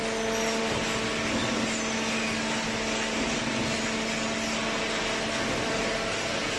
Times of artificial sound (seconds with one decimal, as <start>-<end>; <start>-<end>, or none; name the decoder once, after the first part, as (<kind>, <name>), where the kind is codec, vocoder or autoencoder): none